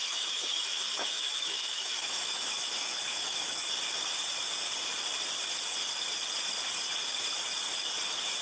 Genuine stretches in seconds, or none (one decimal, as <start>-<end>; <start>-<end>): 3.7-8.4